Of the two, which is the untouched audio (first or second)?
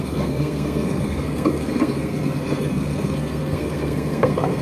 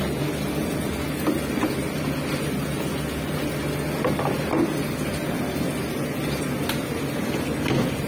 second